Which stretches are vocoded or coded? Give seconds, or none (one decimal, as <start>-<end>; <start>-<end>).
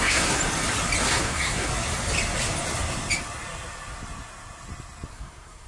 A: 0.0-0.4; 1.0-1.7; 5.1-5.7